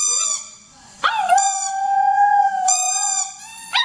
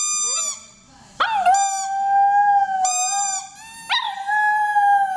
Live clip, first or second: second